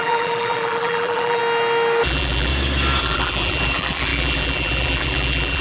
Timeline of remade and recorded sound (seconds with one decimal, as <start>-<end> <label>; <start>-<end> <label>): 0.0-1.4 remade; 1.4-2.0 recorded; 2.0-2.5 remade; 2.5-3.0 recorded; 3.0-5.6 remade